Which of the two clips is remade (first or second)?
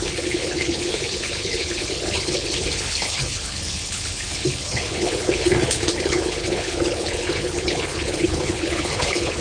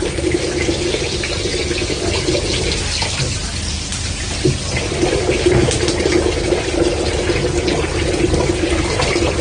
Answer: first